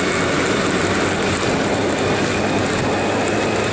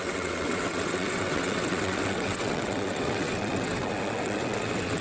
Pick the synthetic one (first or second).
second